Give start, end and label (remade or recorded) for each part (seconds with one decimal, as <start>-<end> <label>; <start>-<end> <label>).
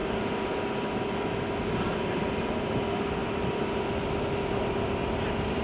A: 0.0-0.6 remade; 0.6-5.6 recorded